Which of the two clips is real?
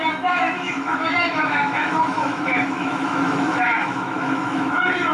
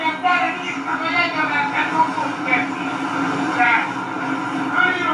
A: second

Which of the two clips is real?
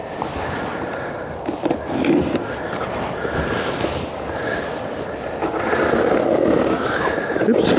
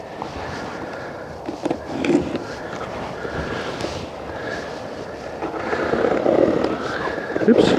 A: first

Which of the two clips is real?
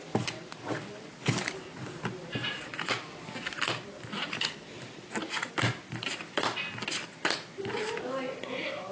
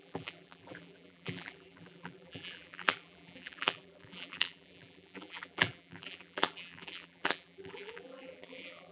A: first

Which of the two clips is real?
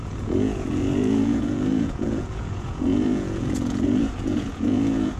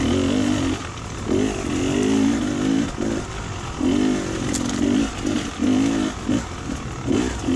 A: second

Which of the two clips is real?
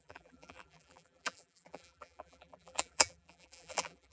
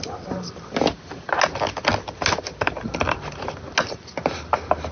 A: second